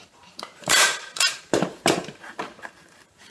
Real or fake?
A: fake